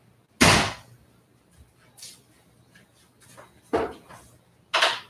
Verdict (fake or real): real